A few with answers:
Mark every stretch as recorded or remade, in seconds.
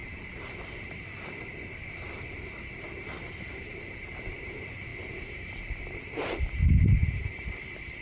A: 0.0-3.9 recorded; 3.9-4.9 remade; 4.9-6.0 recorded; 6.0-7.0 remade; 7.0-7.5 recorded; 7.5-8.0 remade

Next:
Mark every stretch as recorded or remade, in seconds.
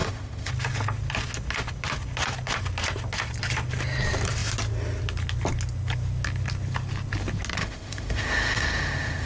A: 0.0-0.5 remade; 0.5-7.6 recorded; 7.6-9.3 remade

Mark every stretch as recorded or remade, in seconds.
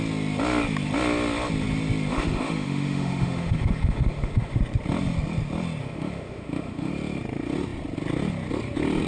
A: 0.0-2.1 recorded; 2.1-4.6 remade; 4.6-5.8 recorded; 5.8-6.9 remade; 6.9-9.1 recorded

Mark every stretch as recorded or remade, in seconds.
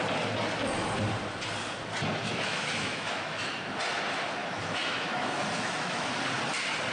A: 0.0-2.2 recorded; 2.2-3.5 remade; 3.5-4.4 recorded; 4.4-6.1 remade; 6.1-6.9 recorded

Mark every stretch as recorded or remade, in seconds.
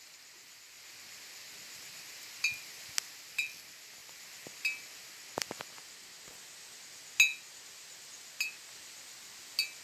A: 0.0-9.8 recorded